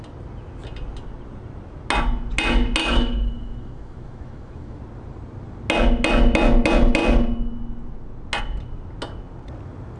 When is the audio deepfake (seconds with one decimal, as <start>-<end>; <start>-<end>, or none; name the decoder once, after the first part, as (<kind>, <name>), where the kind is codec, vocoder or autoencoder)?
2.8-4.8 (autoencoder, DAC-VAE)